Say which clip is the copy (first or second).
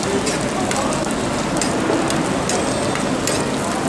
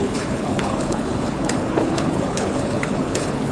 second